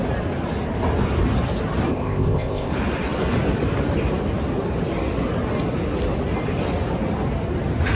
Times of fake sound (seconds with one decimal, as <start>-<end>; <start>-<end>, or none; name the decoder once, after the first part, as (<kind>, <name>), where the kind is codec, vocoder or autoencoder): 1.9-2.7 (codec, ZipCodec)